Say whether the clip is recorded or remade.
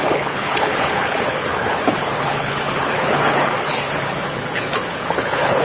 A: remade